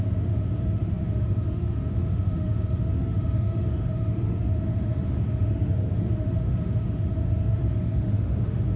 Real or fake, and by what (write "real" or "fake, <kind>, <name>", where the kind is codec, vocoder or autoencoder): fake, autoencoder, DAC-VAE